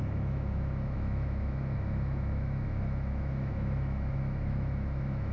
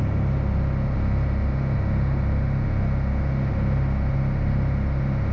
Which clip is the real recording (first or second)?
second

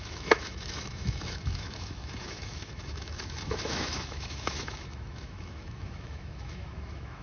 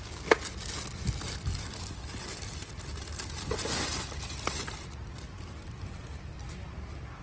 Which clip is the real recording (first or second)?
second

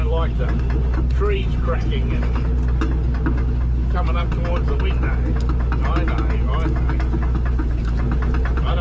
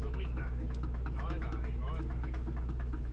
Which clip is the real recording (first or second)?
first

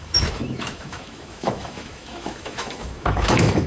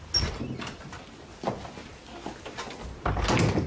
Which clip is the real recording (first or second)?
second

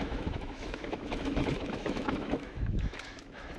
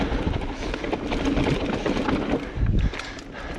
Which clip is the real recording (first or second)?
second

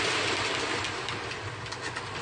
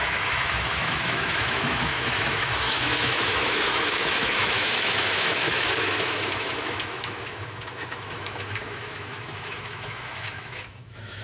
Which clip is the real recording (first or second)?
first